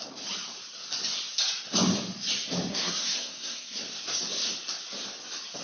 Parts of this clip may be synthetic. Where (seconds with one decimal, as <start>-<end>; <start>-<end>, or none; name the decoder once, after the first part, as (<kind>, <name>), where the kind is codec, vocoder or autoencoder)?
2.7-3.8 (codec, SNAC)